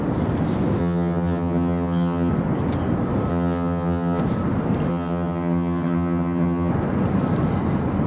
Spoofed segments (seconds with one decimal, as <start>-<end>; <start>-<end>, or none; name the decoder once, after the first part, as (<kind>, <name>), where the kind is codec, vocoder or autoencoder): 0.8-2.3 (vocoder, HiFi-GAN); 3.3-4.2; 4.9-6.7